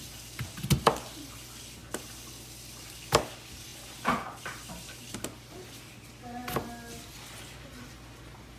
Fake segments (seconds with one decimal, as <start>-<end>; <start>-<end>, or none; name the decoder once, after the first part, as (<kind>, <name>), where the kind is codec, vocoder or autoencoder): none